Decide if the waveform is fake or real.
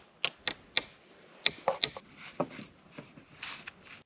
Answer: real